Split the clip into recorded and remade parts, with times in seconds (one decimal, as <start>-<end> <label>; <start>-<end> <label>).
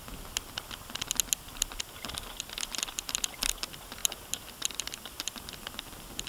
0.0-4.0 recorded; 4.0-5.4 remade; 5.4-6.3 recorded